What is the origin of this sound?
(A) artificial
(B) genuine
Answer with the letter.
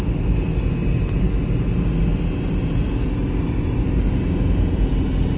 B